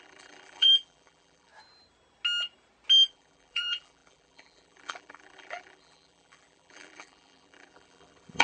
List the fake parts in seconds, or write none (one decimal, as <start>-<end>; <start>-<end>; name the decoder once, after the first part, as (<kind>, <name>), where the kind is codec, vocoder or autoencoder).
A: 0.0-1.5 (vocoder, BigVGAN v2); 3.1-8.4